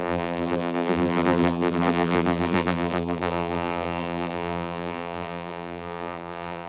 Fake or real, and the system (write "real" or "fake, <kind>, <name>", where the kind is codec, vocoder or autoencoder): fake, vocoder, BigVGAN v2